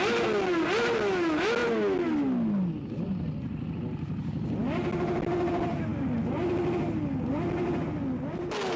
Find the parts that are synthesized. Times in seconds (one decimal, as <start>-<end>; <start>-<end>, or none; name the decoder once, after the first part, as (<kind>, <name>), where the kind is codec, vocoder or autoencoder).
none